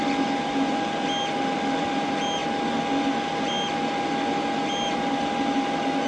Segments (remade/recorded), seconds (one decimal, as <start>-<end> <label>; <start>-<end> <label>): 0.0-6.1 recorded